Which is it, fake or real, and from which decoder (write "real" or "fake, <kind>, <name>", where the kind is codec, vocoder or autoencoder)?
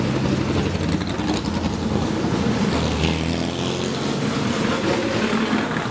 real